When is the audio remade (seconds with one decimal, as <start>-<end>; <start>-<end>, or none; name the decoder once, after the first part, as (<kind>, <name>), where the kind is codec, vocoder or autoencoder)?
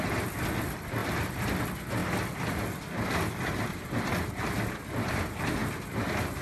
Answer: 1.0-1.6 (vocoder, BigVGAN v2); 5.6-6.4